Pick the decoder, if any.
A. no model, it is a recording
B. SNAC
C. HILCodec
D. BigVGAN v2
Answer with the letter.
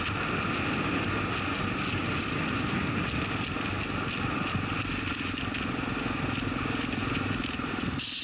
A